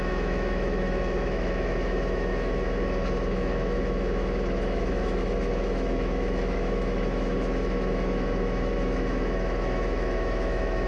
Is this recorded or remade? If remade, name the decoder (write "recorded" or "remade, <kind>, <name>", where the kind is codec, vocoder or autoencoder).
remade, autoencoder, DAC-VAE